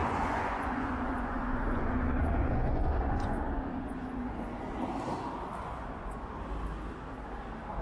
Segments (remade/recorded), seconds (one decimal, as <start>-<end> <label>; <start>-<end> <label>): 0.0-4.7 remade; 4.7-5.6 recorded; 5.6-6.3 remade; 6.3-7.8 recorded